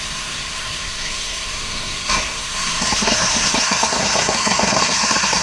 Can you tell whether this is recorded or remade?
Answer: remade